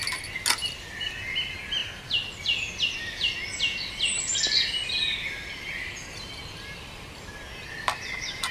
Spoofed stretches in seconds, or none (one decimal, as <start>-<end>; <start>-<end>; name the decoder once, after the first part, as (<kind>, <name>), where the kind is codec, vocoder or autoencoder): 0.6-1.1 (vocoder, BigVGAN v2)